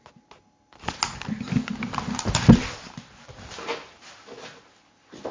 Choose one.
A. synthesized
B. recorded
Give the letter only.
B